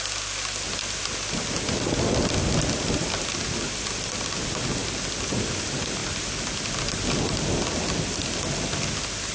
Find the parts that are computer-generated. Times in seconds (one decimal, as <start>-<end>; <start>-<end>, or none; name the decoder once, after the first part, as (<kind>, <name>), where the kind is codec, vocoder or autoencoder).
none